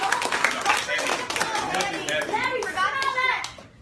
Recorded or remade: recorded